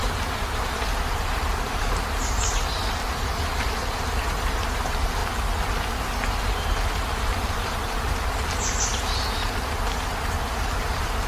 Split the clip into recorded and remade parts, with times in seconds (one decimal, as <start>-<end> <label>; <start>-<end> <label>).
0.0-5.2 remade; 5.2-6.3 recorded; 6.3-11.3 remade